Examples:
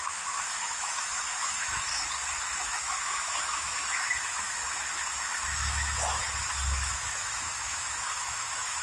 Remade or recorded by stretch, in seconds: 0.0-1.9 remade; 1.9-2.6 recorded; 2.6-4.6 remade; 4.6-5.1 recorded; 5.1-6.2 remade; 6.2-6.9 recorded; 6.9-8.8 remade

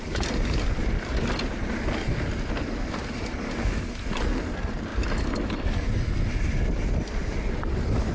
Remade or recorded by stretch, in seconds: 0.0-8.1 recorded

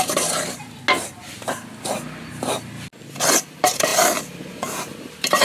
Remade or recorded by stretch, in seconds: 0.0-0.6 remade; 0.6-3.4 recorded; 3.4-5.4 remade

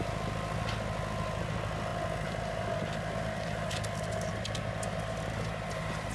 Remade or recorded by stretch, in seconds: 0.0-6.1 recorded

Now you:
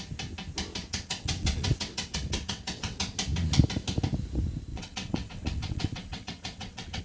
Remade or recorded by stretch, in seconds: 0.0-0.8 recorded; 0.8-3.0 remade; 3.0-4.7 recorded; 4.7-7.0 remade